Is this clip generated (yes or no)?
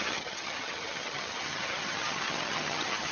yes